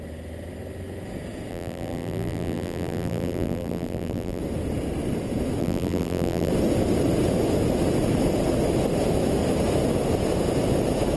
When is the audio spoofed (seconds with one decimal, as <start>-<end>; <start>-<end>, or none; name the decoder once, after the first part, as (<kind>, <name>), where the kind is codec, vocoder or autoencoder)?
1.5-4.4 (vocoder, BigVGAN v2); 5.6-6.5